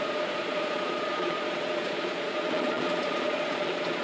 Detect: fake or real fake